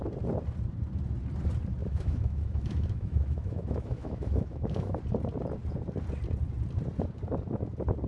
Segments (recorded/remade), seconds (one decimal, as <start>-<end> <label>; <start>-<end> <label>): 0.0-1.8 recorded; 1.8-5.0 remade; 5.0-8.1 recorded